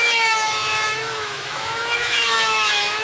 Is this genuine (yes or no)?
no